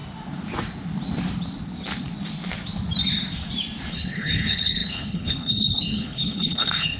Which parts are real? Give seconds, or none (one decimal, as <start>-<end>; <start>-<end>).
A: 0.0-3.9